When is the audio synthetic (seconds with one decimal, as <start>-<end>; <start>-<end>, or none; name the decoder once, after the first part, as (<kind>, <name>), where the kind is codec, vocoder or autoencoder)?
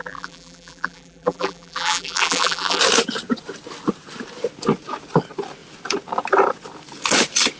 0.0-2.8 (vocoder, BigVGAN v2)